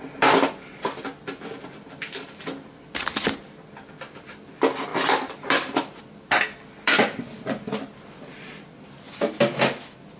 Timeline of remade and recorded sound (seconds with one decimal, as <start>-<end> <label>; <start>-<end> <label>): 0.0-10.2 recorded